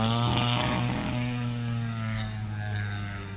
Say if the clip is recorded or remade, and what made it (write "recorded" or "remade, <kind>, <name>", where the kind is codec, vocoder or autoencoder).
remade, codec, DAC